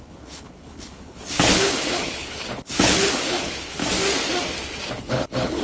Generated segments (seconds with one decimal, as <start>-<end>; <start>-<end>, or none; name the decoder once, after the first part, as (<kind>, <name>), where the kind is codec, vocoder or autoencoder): 0.0-3.8 (codec, HILCodec); 4.9-5.6